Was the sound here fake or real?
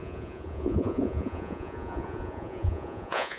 fake